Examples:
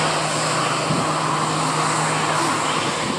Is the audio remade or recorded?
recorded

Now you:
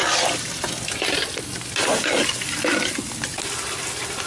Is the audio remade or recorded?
recorded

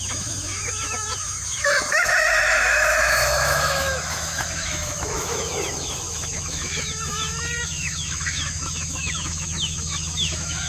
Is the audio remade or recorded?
remade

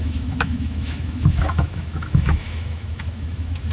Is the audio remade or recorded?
remade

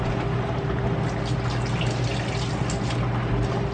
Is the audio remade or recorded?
recorded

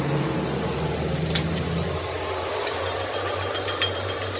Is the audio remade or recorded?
recorded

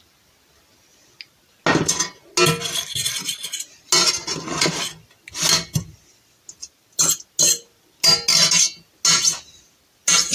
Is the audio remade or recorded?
recorded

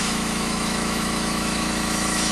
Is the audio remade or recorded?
remade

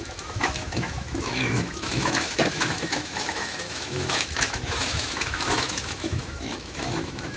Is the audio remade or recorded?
remade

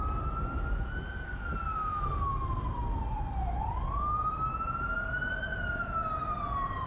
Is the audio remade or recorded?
recorded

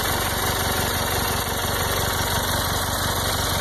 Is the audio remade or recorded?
recorded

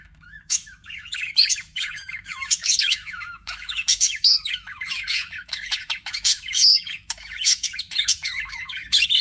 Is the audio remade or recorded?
remade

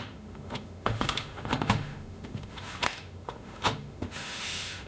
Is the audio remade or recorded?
remade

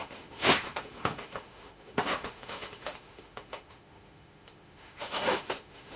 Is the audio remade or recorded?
remade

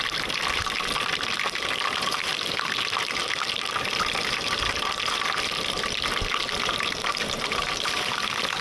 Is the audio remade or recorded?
recorded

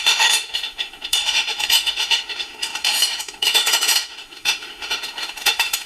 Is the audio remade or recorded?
remade